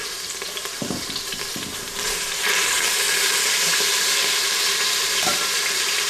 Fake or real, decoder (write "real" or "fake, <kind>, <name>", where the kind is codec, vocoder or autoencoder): fake, vocoder, BigVGAN v2